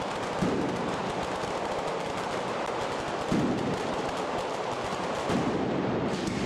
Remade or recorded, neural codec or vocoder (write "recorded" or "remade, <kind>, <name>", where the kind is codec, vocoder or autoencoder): recorded